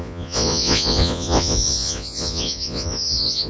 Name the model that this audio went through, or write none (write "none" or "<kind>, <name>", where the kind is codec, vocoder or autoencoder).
vocoder, Vocos